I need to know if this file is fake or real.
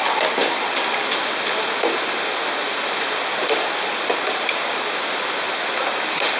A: real